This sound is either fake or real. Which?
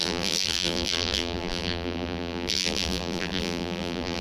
fake